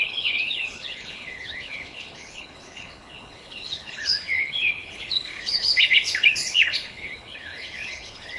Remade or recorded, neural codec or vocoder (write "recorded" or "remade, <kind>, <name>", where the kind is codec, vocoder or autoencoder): remade, codec, HILCodec